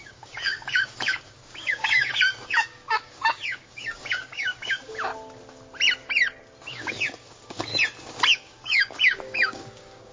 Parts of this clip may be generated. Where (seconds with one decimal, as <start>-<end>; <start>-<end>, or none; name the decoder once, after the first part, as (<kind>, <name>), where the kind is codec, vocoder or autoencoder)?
0.0-5.1 (codec, DAC); 6.7-7.7; 8.3-10.1